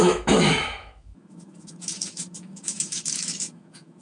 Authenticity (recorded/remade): remade